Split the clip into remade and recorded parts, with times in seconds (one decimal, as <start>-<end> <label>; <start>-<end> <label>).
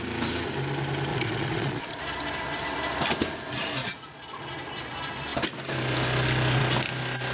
0.0-1.1 recorded; 1.1-1.9 remade; 1.9-3.8 recorded; 3.8-4.4 remade; 4.4-7.3 recorded